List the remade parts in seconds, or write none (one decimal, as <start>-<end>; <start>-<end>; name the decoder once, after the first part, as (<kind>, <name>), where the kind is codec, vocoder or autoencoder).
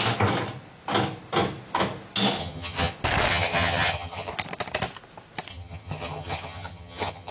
2.4-2.9 (vocoder, HiFi-GAN); 3.3-4.3; 5.5-7.3